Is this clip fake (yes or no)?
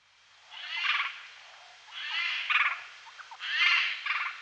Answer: no